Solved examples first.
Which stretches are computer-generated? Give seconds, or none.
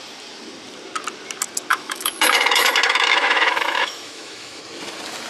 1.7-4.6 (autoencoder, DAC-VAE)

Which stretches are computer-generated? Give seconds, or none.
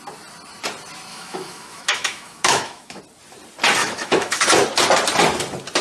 1.1-3.0 (autoencoder, DAC-VAE); 3.8-4.4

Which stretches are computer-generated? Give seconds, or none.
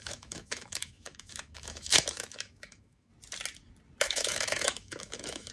0.0-3.1 (autoencoder, DAC-VAE); 4.0-5.5